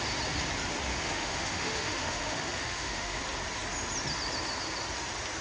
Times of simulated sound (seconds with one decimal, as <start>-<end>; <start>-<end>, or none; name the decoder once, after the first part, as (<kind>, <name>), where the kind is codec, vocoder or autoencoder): 0.9-3.2 (autoencoder, DAC-VAE)